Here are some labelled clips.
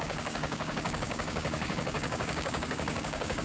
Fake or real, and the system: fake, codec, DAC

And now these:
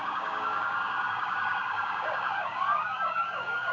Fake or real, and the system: fake, codec, DAC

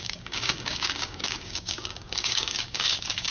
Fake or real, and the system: fake, codec, DAC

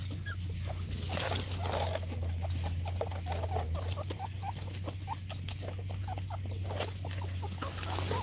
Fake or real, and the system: real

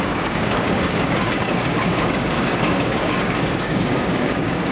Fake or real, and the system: fake, codec, DAC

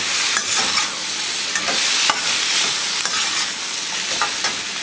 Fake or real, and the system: real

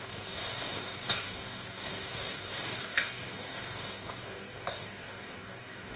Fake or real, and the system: fake, codec, DAC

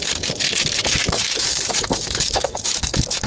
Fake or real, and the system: fake, codec, DAC